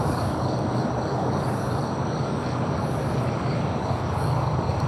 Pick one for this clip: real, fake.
fake